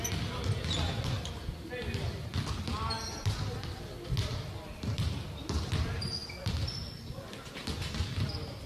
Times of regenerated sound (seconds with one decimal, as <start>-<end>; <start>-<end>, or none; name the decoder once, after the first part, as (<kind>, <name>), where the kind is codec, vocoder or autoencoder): 6.2-6.8 (vocoder, BigVGAN v2)